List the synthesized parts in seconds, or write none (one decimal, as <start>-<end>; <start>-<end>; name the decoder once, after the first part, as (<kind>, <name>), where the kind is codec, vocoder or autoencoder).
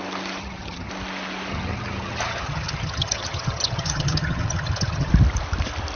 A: 0.4-0.9 (vocoder, HiFi-GAN); 1.5-5.1